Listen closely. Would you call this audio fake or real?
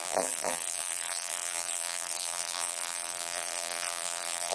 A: fake